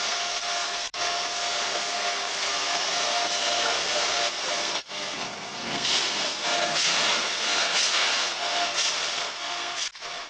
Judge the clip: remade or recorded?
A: remade